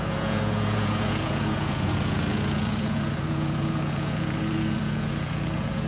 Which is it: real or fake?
fake